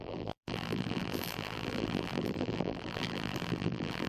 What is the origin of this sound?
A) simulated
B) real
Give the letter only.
A